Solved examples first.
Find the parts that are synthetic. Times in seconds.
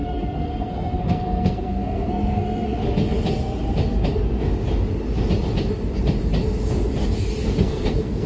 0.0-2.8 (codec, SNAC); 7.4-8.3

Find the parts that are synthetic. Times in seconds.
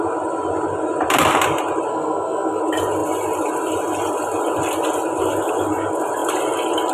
1.9-2.6 (codec, SNAC)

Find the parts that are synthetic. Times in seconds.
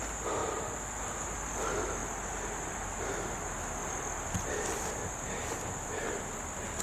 none